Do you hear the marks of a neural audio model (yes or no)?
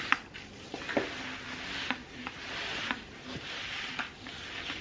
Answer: no